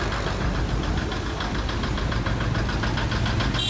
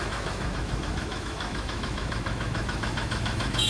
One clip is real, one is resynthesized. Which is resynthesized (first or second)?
second